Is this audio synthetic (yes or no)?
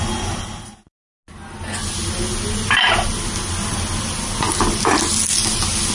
no